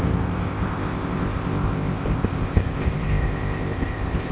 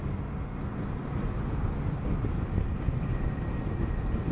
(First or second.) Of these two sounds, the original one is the second